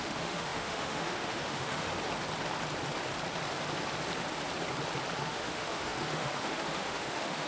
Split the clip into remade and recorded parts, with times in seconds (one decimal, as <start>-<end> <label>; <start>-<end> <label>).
0.0-1.9 remade; 1.9-5.2 recorded; 5.2-7.5 remade

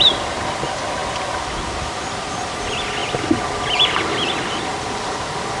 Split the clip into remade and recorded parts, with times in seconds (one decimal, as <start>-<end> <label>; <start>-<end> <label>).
0.0-5.6 recorded

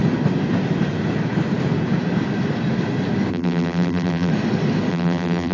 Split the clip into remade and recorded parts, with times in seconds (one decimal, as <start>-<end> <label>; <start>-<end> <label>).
0.0-3.3 recorded; 3.3-4.3 remade; 4.3-4.9 recorded; 4.9-5.5 remade

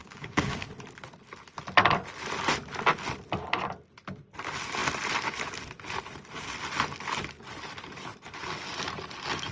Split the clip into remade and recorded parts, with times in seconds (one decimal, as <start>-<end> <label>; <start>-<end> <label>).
0.0-0.7 remade; 0.7-9.5 recorded

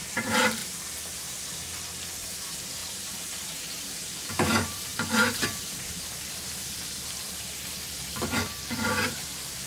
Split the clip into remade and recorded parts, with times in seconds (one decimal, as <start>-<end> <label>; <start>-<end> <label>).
0.0-0.6 remade; 0.6-2.4 recorded; 2.4-9.7 remade